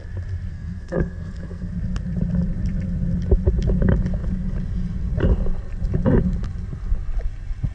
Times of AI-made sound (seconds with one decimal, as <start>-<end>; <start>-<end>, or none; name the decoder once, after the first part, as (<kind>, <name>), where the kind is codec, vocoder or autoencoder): 0.5-1.7 (codec, SNAC)